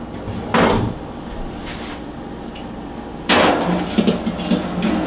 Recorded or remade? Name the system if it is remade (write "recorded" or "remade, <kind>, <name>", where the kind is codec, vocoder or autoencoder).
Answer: recorded